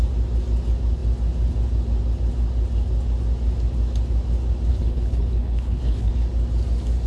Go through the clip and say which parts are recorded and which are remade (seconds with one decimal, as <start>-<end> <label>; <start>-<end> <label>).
0.0-4.7 recorded; 4.7-6.1 remade; 6.1-7.1 recorded

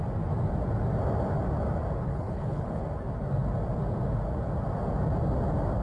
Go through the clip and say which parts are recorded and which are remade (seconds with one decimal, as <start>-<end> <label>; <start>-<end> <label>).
0.0-2.1 recorded; 2.1-2.8 remade; 2.8-5.8 recorded